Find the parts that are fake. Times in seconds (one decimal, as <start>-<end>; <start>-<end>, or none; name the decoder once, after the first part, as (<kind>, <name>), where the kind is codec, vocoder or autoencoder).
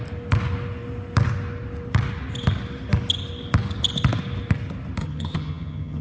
5.0-6.0 (vocoder, HiFi-GAN)